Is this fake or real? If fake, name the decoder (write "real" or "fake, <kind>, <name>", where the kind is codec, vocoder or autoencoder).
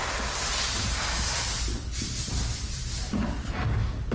real